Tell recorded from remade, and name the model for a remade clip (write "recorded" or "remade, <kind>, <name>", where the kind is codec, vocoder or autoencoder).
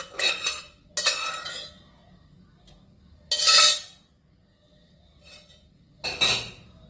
recorded